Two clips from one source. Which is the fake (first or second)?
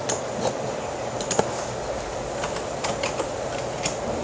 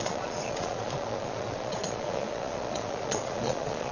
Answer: second